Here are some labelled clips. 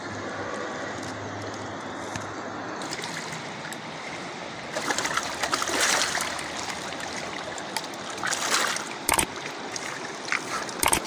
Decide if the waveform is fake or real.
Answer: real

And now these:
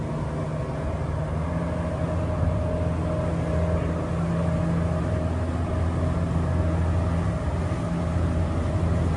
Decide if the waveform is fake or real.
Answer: real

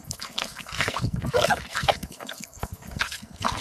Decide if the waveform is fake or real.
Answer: fake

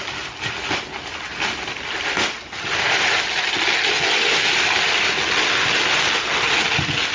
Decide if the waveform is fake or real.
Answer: real